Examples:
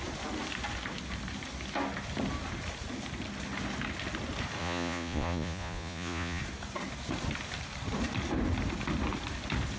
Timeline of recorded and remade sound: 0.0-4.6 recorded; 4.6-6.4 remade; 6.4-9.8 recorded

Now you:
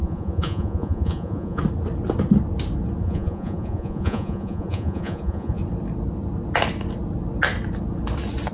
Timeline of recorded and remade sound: 0.0-1.6 remade; 1.6-3.0 recorded; 3.0-5.6 remade; 5.6-8.5 recorded

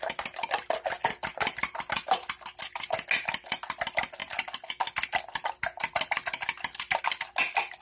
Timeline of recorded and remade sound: 0.0-7.8 recorded

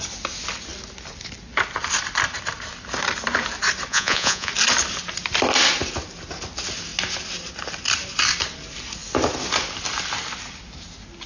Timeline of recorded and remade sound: 0.0-3.9 recorded; 3.9-4.5 remade; 4.5-11.3 recorded

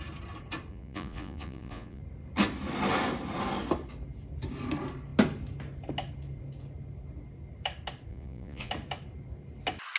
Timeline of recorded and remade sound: 0.0-0.7 recorded; 0.7-2.0 remade; 2.0-8.1 recorded; 8.1-8.7 remade; 8.7-10.0 recorded

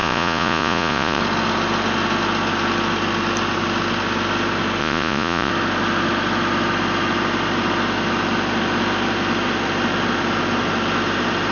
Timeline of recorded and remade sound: 0.0-1.2 remade; 1.2-4.8 recorded; 4.8-5.5 remade; 5.5-11.5 recorded

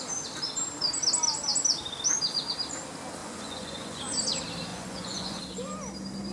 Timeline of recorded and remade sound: 0.0-3.2 recorded; 3.2-4.0 remade; 4.0-4.7 recorded; 4.7-5.4 remade; 5.4-6.3 recorded